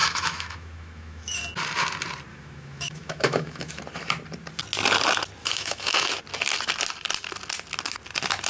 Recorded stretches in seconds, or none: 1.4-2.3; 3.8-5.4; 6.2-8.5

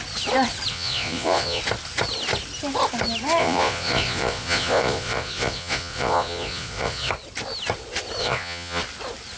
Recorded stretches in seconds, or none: 0.0-0.7; 1.6-3.4; 7.1-8.2; 8.8-9.4